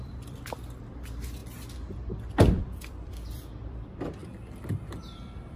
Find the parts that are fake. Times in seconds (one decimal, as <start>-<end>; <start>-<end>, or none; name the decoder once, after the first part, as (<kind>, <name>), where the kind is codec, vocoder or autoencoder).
0.0-1.4 (vocoder, BigVGAN v2); 2.6-5.6